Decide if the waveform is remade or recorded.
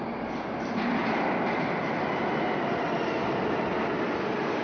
recorded